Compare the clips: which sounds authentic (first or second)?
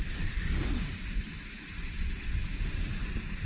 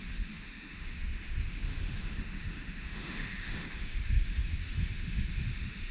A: first